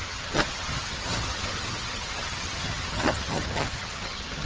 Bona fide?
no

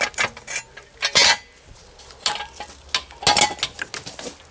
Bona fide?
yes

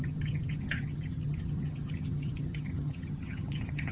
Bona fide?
no